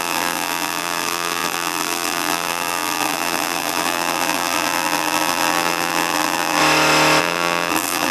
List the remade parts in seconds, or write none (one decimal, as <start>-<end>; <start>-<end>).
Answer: 0.0-6.6; 7.2-8.1

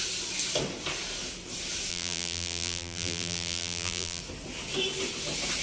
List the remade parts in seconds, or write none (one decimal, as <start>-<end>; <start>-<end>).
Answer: 1.9-4.2

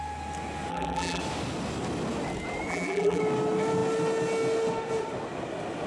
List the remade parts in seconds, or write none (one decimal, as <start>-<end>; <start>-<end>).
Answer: 0.7-1.2; 2.7-3.2

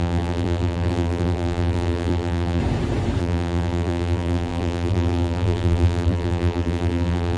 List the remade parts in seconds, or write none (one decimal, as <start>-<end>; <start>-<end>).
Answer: 0.0-2.6; 3.2-7.4

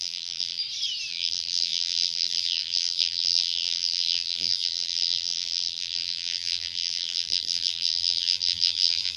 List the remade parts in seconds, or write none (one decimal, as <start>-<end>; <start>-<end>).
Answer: 0.0-0.6; 1.1-9.2